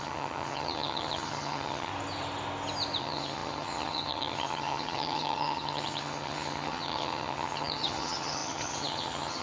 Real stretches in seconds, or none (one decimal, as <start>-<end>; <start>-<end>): 1.9-3.0